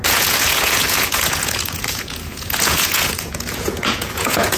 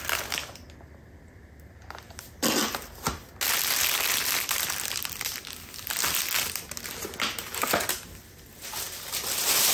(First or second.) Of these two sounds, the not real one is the first